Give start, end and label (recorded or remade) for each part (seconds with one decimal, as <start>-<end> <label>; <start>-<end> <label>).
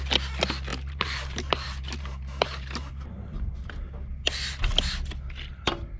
0.0-0.7 recorded; 0.7-3.1 remade; 3.1-6.0 recorded